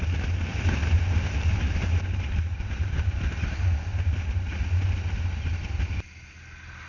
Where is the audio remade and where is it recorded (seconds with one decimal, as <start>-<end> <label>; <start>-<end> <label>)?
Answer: 0.0-0.5 recorded; 0.5-3.7 remade; 3.7-6.9 recorded